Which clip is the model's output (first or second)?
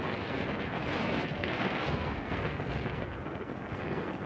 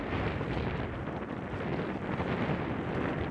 first